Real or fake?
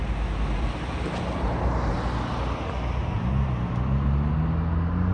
real